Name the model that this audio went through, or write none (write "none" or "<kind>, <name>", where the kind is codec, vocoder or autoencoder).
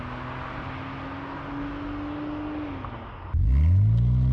none